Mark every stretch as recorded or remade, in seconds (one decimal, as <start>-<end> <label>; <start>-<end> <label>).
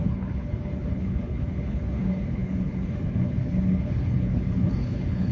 0.0-5.3 remade